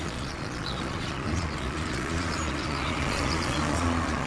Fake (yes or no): yes